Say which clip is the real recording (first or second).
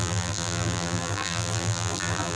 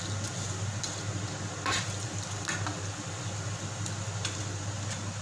second